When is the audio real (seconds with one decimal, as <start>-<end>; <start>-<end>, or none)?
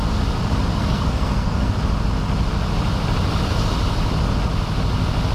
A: 0.0-0.7; 1.7-5.3